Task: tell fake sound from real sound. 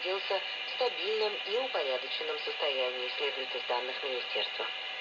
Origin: real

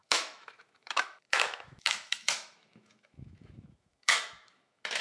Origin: fake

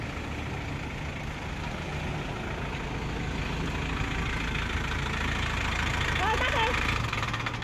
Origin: real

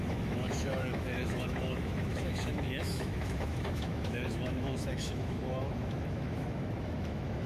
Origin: fake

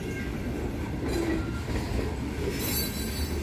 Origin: real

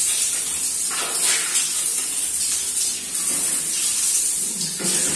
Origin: real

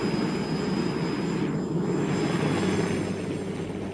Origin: real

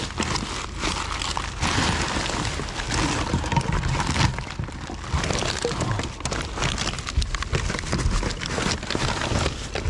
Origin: real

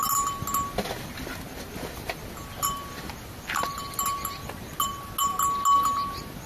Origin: real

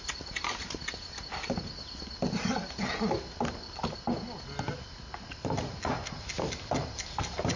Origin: real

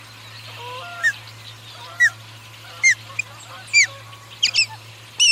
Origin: real